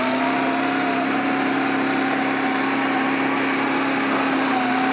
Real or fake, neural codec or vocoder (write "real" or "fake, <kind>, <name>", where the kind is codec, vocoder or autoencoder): real